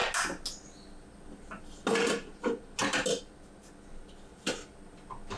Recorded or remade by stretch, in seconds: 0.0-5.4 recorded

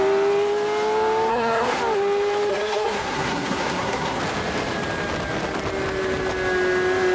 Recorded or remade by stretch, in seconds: 0.0-1.3 recorded; 1.3-1.8 remade; 1.8-2.5 recorded; 2.5-4.2 remade; 4.2-7.1 recorded

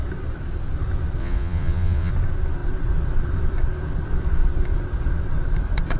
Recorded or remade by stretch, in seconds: 0.0-1.2 recorded; 1.2-2.1 remade; 2.1-6.0 recorded

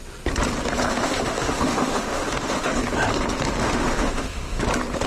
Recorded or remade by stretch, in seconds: 0.0-0.9 recorded; 0.9-2.8 remade; 2.8-3.6 recorded; 3.6-4.6 remade; 4.6-5.1 recorded